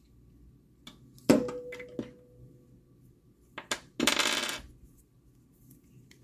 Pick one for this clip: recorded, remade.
recorded